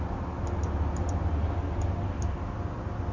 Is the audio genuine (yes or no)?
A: yes